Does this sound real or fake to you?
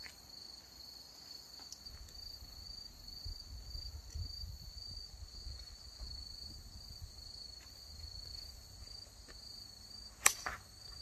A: real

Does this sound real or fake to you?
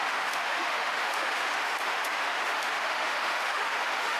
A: fake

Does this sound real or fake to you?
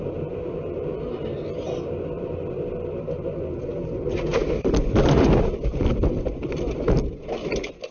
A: real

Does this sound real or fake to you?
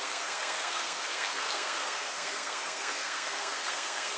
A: fake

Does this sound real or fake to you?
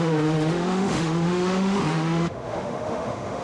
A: fake